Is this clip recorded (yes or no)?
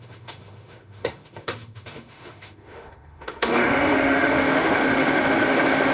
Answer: no